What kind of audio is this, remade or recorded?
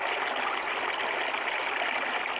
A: recorded